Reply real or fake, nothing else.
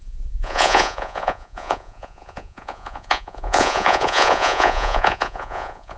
fake